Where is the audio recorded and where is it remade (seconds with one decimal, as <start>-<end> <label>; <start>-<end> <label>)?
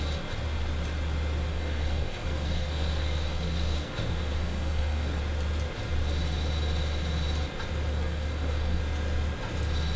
0.0-1.5 recorded; 1.5-5.2 remade; 5.2-7.9 recorded; 7.9-8.8 remade; 8.8-10.0 recorded